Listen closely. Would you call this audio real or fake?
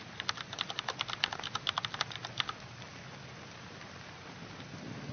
real